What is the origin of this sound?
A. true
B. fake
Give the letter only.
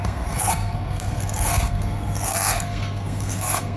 B